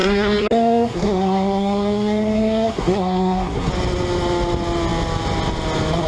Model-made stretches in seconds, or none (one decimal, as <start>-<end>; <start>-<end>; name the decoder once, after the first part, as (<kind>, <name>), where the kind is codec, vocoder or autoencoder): 0.0-3.7 (codec, SNAC)